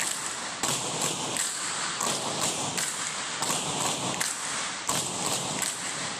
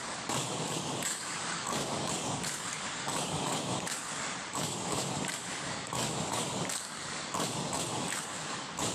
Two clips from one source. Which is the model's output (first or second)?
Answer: second